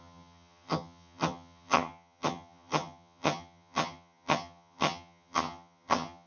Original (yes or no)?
no